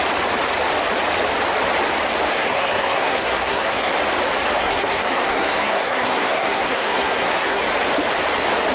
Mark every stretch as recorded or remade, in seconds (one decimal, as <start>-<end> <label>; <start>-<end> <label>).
0.0-2.3 recorded; 2.3-3.9 remade; 3.9-4.6 recorded; 4.6-7.6 remade; 7.6-8.7 recorded